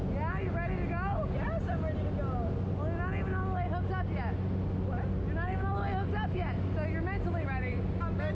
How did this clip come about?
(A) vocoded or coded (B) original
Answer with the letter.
B